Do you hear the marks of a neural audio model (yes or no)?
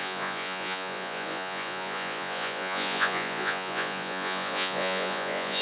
yes